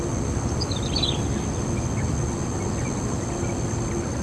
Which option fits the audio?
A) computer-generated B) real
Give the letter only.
B